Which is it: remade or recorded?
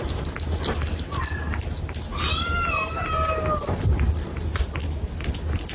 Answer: recorded